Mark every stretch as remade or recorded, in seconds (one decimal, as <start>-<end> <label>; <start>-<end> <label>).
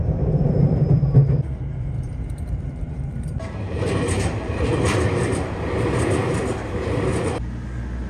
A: 0.0-4.6 remade; 4.6-8.1 recorded